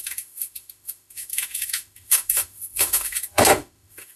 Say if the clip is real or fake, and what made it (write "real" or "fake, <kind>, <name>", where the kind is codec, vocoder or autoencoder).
fake, autoencoder, DAC-VAE